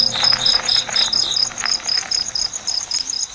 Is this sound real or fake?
fake